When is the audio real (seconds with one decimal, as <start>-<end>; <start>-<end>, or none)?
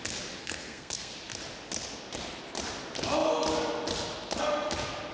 0.0-0.4; 1.1-5.1